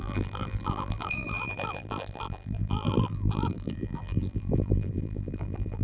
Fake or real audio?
fake